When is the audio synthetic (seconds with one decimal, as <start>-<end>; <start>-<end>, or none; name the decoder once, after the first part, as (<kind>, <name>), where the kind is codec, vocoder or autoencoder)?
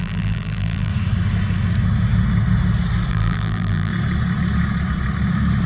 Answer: 0.0-0.9 (vocoder, BigVGAN v2); 3.1-3.9